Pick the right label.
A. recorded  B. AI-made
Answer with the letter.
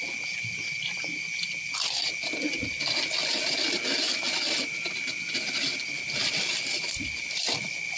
B